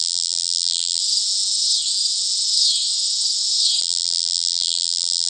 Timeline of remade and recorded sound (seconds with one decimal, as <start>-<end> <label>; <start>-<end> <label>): 0.0-1.0 remade; 1.0-3.8 recorded; 3.8-5.3 remade